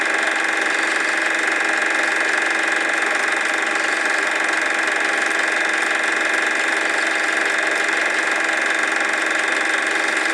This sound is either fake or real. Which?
real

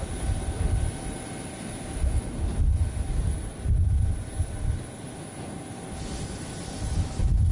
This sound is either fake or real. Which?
real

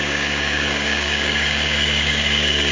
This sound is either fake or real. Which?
fake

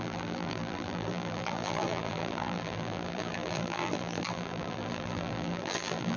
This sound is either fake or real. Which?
fake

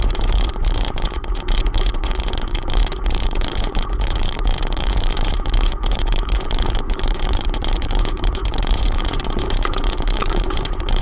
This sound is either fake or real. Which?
fake